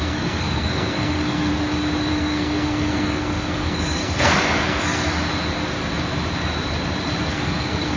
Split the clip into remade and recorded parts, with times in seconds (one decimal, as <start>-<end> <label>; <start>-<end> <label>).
0.0-1.5 remade; 1.5-2.1 recorded; 2.1-5.1 remade; 5.1-7.3 recorded; 7.3-8.0 remade